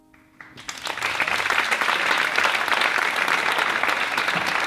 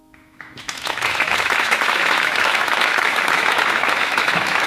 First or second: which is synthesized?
second